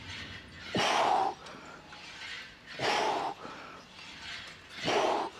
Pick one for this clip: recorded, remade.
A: recorded